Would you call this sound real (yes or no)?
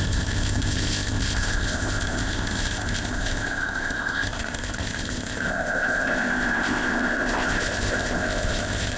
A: no